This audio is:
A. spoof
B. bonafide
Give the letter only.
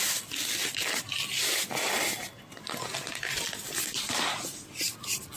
B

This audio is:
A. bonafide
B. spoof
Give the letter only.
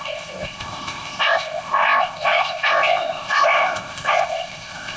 B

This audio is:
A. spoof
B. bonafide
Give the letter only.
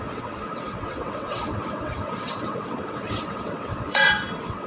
A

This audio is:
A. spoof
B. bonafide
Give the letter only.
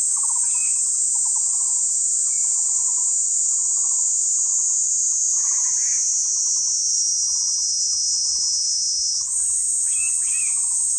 B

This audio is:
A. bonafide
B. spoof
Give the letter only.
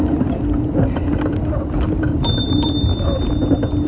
B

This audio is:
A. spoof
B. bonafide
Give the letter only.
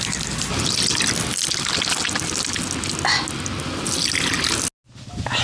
B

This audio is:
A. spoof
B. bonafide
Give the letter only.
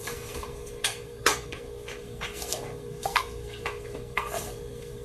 A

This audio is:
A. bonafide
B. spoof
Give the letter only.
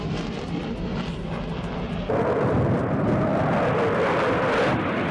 A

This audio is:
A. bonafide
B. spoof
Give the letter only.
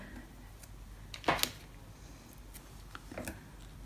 A